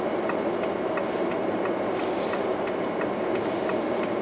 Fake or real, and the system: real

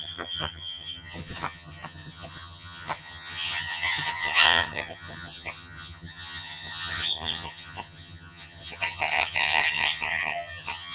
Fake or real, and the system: fake, vocoder, HiFi-GAN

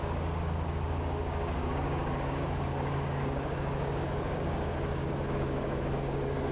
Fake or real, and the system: fake, codec, DAC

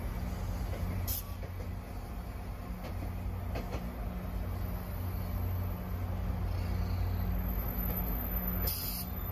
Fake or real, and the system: real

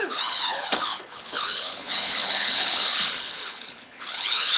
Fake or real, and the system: fake, codec, HILCodec